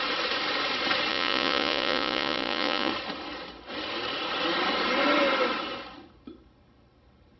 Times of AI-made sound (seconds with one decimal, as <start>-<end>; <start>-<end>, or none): 1.1-2.9